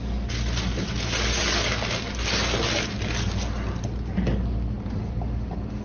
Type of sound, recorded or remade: recorded